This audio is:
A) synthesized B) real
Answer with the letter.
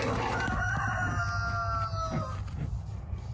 B